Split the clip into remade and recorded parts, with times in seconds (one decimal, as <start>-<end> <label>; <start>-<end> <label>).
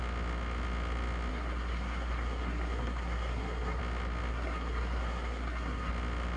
0.0-1.3 recorded; 1.3-3.8 remade; 3.8-4.3 recorded; 4.3-5.9 remade; 5.9-6.4 recorded